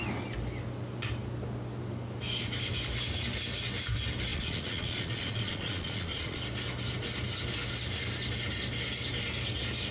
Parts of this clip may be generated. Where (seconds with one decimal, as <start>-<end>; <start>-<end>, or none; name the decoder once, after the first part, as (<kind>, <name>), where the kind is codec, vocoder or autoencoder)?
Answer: 4.3-6.4 (vocoder, Vocos)